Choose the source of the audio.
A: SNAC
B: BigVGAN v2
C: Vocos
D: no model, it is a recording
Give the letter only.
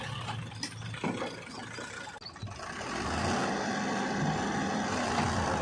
D